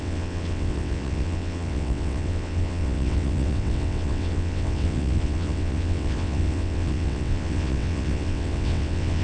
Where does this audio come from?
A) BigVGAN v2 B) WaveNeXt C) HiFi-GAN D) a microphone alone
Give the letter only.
B